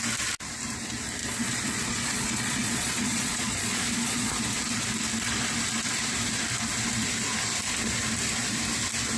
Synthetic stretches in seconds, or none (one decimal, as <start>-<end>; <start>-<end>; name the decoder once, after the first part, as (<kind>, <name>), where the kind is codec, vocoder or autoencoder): 1.2-4.4 (vocoder, Vocos)